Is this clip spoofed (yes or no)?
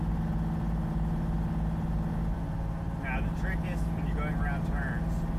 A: no